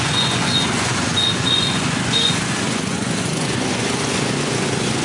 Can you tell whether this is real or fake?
fake